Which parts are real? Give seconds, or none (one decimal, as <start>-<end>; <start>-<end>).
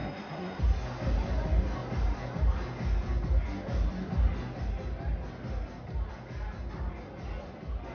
0.6-7.9